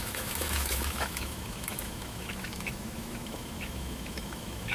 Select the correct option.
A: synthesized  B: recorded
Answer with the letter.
A